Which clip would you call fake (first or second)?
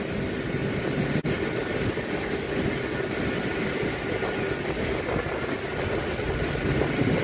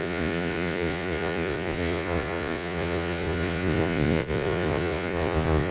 second